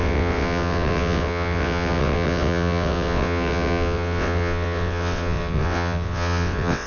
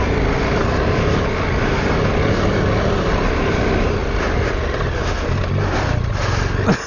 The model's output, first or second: first